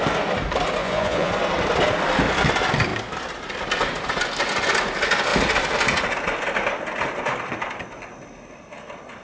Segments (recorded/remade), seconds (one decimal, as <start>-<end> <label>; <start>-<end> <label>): 0.0-0.8 recorded; 0.8-1.3 remade; 1.3-9.2 recorded